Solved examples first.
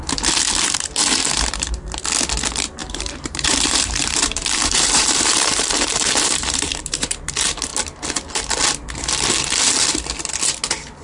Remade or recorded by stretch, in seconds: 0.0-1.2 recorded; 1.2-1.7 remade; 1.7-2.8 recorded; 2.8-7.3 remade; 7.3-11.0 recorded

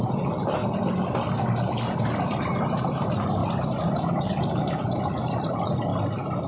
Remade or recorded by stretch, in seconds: 0.0-0.6 remade; 0.6-2.7 recorded; 2.7-3.4 remade; 3.4-4.4 recorded; 4.4-5.9 remade; 5.9-6.5 recorded

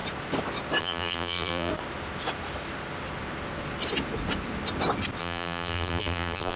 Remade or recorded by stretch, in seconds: 0.0-0.8 recorded; 0.8-1.7 remade; 1.7-5.2 recorded; 5.2-6.6 remade

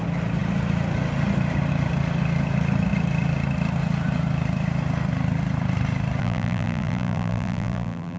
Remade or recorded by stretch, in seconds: 0.0-6.2 recorded; 6.2-8.2 remade

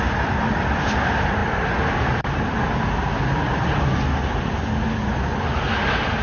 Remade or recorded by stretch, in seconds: 0.0-6.2 recorded

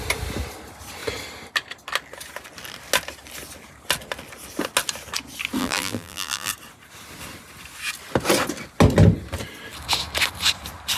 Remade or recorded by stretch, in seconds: 0.0-5.6 recorded; 5.6-6.5 remade; 6.5-11.0 recorded